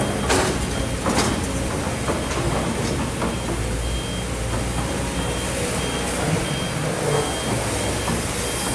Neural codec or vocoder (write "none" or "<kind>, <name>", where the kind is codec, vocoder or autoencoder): none